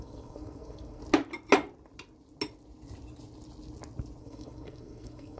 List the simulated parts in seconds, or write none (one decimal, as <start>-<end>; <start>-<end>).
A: 0.0-1.0; 4.2-5.4